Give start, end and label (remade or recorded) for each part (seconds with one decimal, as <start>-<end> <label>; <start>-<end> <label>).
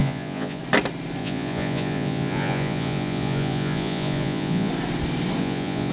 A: 0.0-0.6 remade; 0.6-1.2 recorded; 1.2-4.7 remade; 4.7-5.4 recorded; 5.4-5.9 remade